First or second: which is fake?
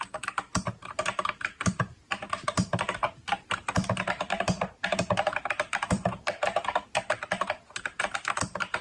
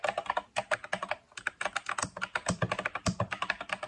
first